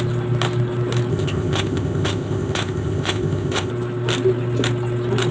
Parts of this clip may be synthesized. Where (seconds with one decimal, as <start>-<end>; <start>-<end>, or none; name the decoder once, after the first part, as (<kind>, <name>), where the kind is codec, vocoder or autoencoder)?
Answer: 1.1-3.7 (codec, ZipCodec)